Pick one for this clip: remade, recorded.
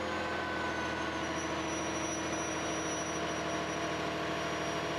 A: recorded